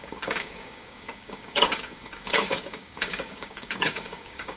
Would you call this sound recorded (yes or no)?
no